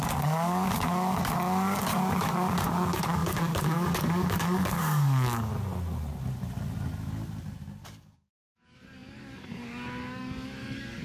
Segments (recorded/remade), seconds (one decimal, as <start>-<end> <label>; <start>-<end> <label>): 0.0-5.5 remade; 5.5-7.8 recorded; 7.8-11.0 remade